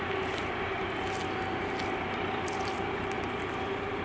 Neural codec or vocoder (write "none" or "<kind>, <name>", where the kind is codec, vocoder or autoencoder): none